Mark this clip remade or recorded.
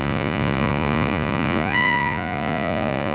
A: remade